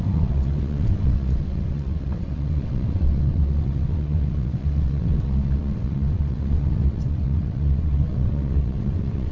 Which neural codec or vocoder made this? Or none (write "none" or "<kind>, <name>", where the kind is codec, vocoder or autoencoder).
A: vocoder, WaveNeXt